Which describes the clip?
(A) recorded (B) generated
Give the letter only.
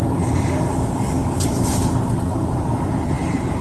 B